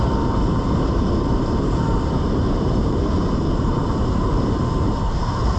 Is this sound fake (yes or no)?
yes